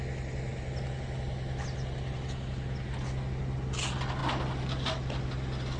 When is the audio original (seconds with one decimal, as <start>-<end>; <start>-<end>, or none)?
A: 0.0-5.8